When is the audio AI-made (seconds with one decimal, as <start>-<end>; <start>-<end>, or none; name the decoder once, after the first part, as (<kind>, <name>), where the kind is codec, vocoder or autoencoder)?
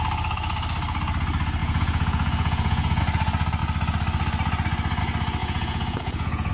1.6-3.0 (vocoder, Vocos); 5.4-6.5